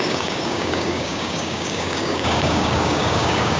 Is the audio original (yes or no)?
no